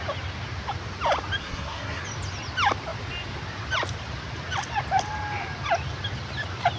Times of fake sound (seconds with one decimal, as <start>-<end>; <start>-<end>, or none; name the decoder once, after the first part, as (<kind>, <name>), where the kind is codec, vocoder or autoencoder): 1.4-2.0 (codec, SNAC)